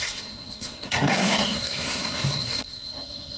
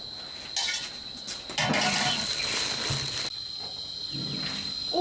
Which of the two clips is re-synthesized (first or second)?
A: first